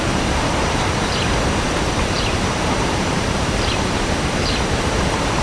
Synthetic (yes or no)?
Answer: yes